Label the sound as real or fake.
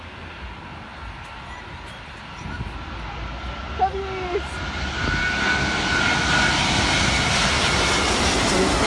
real